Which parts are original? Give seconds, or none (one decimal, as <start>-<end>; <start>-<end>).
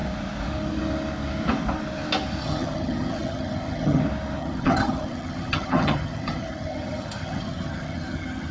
0.0-2.4; 4.0-4.4